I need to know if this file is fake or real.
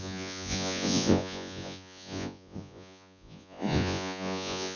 fake